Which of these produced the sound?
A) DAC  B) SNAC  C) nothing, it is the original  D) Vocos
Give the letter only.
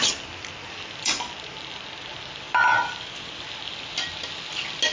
C